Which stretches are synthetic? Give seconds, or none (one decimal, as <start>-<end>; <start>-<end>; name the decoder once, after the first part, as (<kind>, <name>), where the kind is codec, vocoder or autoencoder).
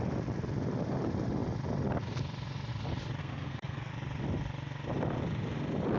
3.2-3.9 (codec, SNAC)